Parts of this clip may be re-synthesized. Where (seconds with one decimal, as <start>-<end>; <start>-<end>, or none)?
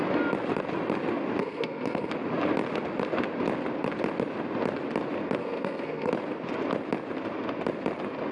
1.4-2.1; 5.4-6.1